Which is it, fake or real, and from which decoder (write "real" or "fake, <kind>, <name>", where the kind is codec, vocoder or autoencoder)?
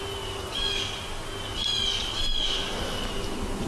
real